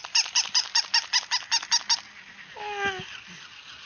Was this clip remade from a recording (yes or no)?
no